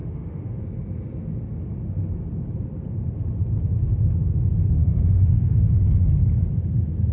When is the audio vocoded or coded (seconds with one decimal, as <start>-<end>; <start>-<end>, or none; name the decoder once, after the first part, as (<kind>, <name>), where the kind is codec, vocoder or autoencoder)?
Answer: 0.0-0.6 (autoencoder, DAC-VAE); 4.8-5.7